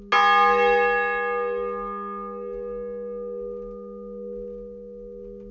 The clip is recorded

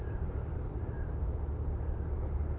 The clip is recorded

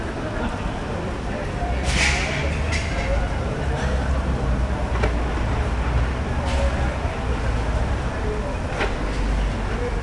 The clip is recorded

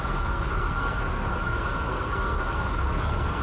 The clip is remade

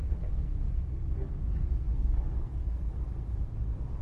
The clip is remade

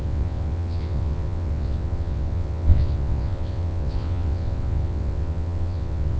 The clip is remade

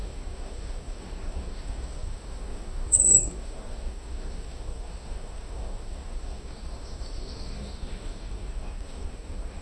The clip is remade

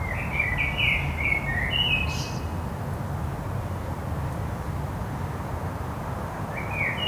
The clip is recorded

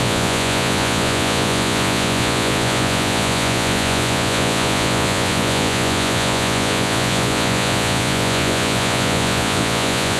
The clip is remade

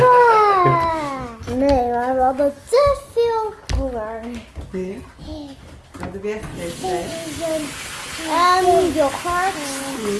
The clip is recorded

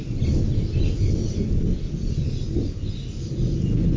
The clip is recorded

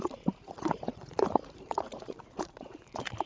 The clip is remade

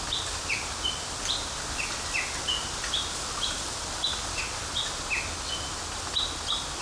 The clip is recorded